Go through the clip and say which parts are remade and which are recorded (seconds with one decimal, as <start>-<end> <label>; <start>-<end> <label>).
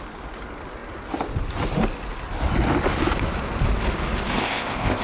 0.0-4.4 recorded; 4.4-5.0 remade